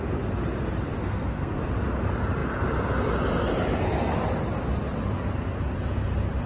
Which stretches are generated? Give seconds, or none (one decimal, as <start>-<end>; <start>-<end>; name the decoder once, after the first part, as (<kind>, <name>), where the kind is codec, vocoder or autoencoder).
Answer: 1.0-1.6 (codec, SNAC)